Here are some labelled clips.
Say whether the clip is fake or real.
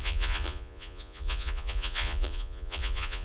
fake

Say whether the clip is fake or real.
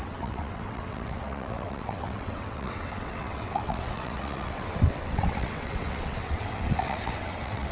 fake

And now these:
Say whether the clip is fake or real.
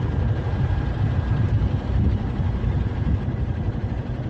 fake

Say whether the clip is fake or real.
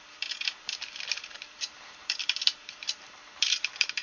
fake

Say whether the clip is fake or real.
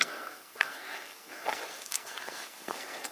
fake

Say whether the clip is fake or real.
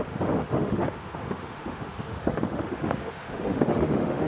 fake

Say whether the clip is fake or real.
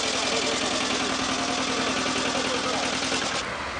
real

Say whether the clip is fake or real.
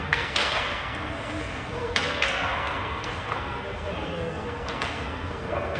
fake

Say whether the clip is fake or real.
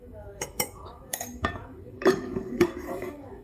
fake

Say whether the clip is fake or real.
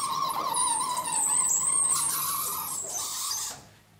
real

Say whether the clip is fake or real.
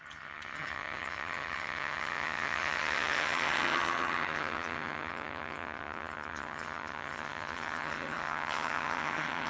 fake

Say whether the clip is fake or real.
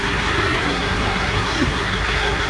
fake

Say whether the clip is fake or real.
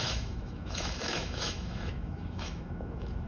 fake